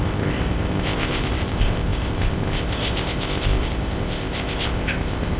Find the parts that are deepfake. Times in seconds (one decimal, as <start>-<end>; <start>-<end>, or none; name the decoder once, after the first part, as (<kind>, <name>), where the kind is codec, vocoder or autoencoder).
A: 0.0-5.4 (codec, ZipCodec)